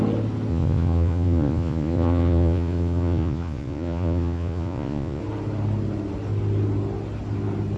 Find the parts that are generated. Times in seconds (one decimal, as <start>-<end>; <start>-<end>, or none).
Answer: 0.5-5.2

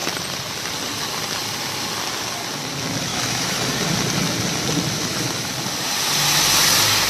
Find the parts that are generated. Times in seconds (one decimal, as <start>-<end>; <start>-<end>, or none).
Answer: 3.1-3.7; 5.0-5.5

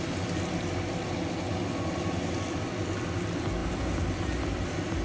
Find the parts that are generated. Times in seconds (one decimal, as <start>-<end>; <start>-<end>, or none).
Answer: none

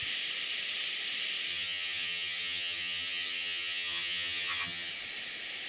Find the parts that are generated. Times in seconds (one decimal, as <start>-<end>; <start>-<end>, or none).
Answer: 1.5-4.9

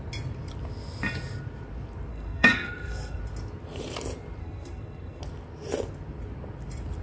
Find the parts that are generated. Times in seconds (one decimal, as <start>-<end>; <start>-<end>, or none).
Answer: 2.1-3.2; 4.4-5.2